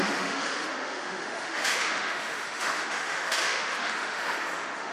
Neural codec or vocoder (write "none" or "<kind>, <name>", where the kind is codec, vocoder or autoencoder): autoencoder, DAC-VAE